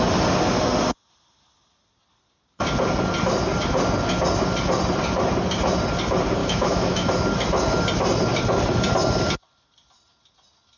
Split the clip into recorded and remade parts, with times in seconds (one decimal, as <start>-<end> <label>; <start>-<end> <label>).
0.0-6.4 recorded; 6.4-7.1 remade; 7.1-10.8 recorded